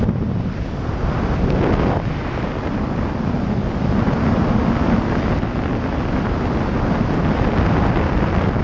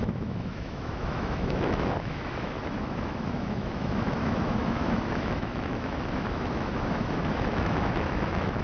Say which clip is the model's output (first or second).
second